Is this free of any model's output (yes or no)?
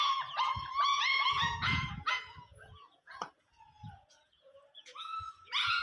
no